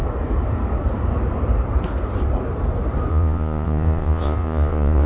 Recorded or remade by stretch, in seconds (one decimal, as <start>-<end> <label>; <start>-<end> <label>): 0.0-3.1 recorded; 3.1-5.1 remade

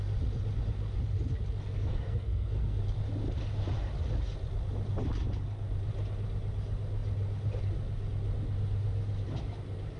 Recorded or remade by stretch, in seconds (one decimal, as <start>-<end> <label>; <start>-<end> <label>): 0.0-1.7 recorded; 1.7-2.8 remade; 2.8-10.0 recorded

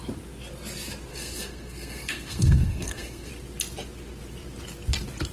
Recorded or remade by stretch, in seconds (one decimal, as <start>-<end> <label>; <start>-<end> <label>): 0.0-1.1 recorded; 1.1-3.3 remade; 3.3-5.3 recorded

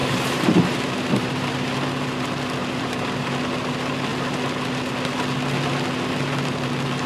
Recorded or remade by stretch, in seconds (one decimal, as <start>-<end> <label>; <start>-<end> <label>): 0.0-1.8 remade; 1.8-2.6 recorded; 2.6-3.4 remade; 3.4-7.1 recorded

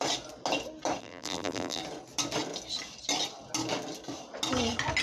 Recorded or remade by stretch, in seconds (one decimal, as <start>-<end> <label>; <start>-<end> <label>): 0.0-1.0 recorded; 1.0-1.8 remade; 1.8-5.0 recorded